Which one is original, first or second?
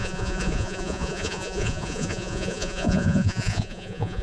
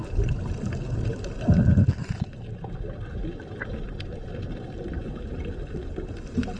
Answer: second